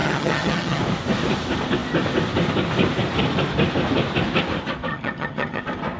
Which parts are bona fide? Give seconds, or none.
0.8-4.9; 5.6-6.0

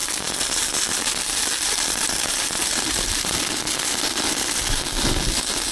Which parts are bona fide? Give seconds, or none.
3.4-5.7